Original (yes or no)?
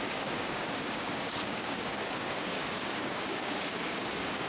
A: no